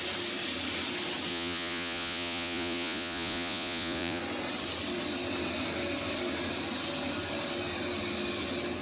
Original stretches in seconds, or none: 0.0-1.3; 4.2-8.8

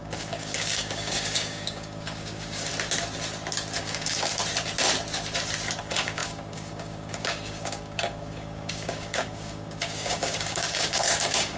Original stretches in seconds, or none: 2.7-3.8; 4.4-5.8

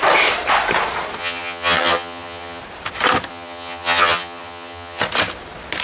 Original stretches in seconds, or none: 0.0-1.2; 2.6-3.3; 5.0-5.8